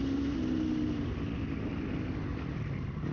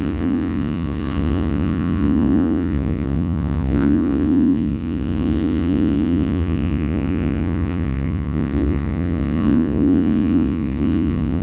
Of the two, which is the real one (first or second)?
first